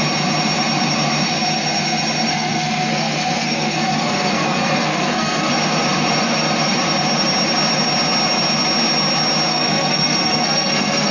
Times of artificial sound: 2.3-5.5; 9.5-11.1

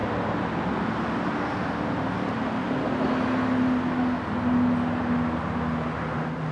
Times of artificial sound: none

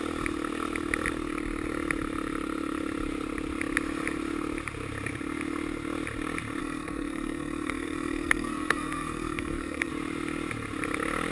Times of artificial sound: 6.6-9.9

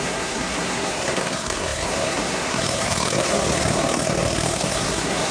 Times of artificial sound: 0.0-5.3